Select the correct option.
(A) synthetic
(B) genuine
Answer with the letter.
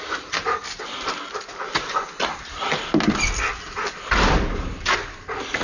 B